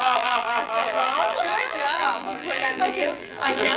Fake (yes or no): yes